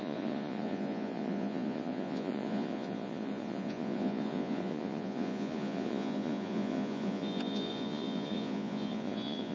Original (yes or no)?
no